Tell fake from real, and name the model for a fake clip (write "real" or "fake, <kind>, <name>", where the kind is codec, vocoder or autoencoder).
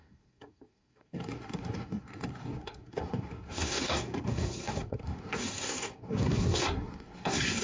fake, codec, SNAC